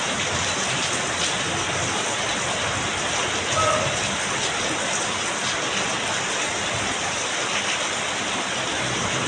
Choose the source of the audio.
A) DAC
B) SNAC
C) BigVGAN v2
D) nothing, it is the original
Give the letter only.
D